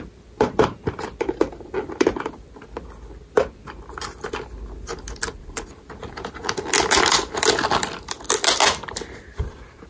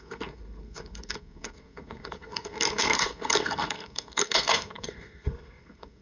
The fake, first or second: second